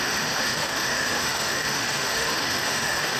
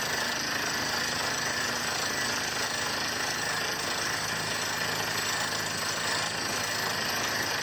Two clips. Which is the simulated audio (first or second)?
first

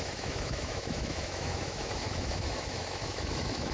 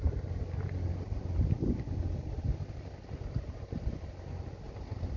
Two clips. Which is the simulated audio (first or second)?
first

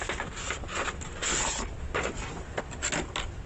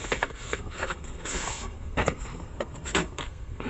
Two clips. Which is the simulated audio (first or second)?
second